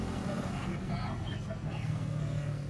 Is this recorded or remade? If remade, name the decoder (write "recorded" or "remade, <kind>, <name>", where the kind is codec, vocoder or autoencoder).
remade, codec, SNAC